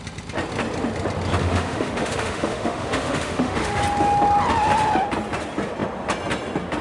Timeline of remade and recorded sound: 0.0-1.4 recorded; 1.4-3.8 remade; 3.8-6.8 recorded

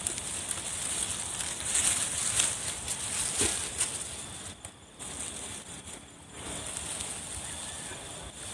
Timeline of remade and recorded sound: 0.0-8.5 recorded

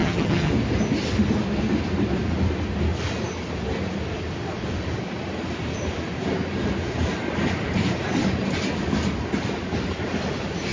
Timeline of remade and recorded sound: 0.0-0.5 remade; 0.5-10.7 recorded

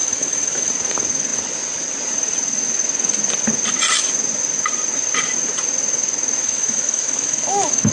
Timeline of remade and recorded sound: 0.0-0.7 remade; 0.7-6.4 recorded; 6.4-7.9 remade

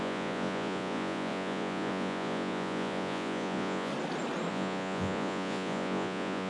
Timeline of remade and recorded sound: 0.0-3.9 remade; 3.9-4.5 recorded; 4.5-6.5 remade

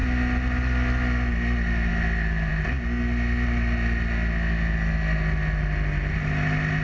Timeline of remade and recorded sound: 0.0-6.8 recorded

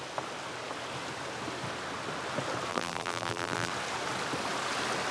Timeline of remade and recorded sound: 0.0-2.7 recorded; 2.7-3.7 remade; 3.7-5.1 recorded